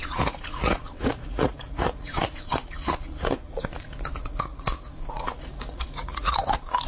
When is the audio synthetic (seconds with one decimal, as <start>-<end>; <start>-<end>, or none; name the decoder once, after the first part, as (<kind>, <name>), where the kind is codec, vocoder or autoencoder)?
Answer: 0.0-6.9 (vocoder, Vocos)